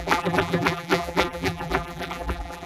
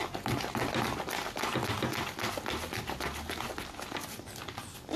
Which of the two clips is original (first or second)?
second